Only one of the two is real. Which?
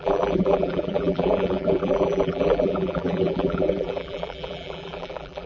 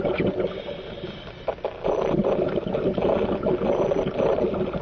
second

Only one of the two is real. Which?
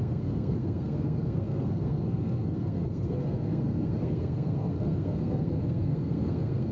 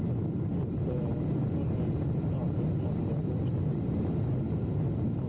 second